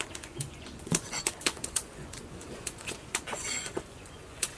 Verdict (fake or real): fake